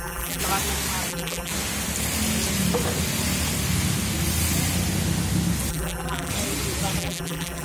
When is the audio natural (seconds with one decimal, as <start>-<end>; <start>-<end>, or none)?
0.4-1.1; 1.5-5.7; 6.3-7.0